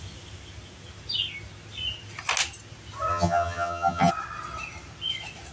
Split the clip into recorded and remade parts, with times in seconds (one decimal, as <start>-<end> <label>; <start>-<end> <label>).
0.0-3.1 recorded; 3.1-4.1 remade; 4.1-5.5 recorded